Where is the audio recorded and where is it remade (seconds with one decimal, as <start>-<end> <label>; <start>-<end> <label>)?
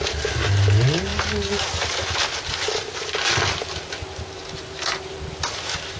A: 0.0-6.0 recorded